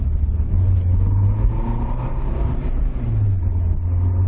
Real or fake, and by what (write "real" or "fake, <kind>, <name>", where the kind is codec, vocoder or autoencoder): real